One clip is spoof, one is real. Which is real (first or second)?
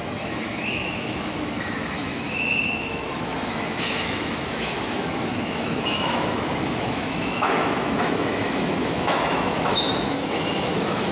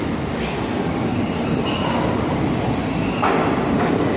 second